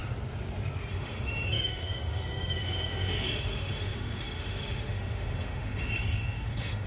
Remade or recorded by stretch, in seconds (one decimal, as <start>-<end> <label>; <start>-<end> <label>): 0.0-0.9 recorded; 0.9-6.9 remade